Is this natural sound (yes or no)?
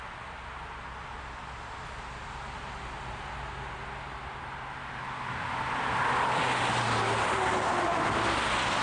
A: yes